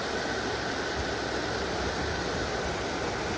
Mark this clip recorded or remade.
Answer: recorded